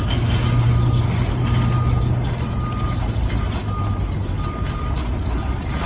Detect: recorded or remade recorded